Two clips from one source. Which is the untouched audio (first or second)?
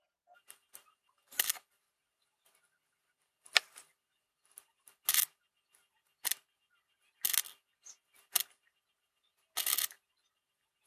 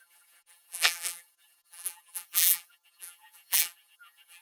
first